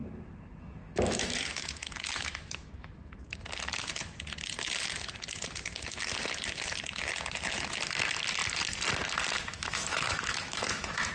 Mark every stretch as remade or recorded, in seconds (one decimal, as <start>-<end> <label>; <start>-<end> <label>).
0.0-3.4 remade; 3.4-9.5 recorded; 9.5-11.1 remade